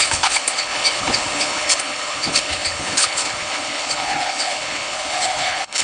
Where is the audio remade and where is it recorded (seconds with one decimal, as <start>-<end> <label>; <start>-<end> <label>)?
0.0-5.8 remade